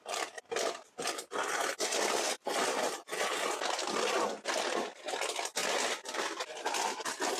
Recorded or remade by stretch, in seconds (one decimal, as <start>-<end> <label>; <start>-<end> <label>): 0.0-7.4 recorded